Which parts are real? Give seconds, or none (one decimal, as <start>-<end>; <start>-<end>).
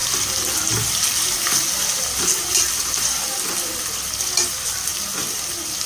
3.4-4.9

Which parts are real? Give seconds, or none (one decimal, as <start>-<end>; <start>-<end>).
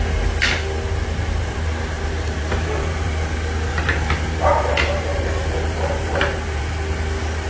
0.0-1.4; 3.1-3.7; 6.6-7.5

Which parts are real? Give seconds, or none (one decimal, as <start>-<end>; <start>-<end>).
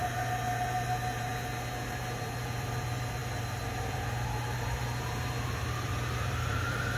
1.3-1.9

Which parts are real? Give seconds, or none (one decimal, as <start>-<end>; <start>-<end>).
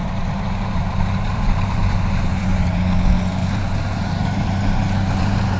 2.8-3.4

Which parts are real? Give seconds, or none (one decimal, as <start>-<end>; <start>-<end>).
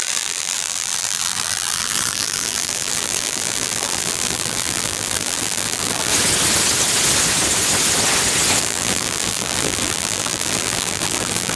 6.1-8.6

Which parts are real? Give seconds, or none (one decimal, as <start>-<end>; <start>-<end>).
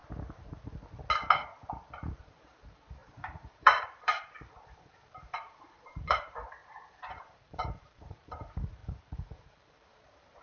0.0-2.2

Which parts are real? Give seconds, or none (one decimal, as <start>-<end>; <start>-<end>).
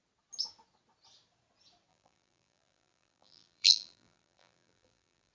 0.0-1.9